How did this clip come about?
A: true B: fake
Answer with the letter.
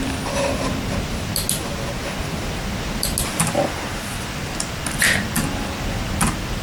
A